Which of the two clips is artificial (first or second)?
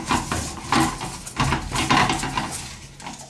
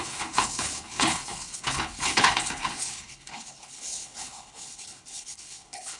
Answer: second